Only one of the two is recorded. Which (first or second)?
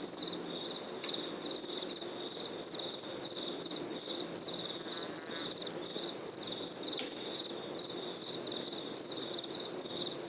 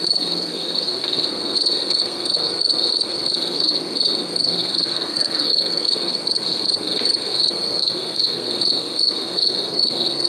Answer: first